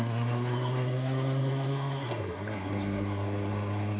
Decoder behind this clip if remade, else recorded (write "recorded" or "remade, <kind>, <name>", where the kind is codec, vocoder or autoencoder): remade, codec, SNAC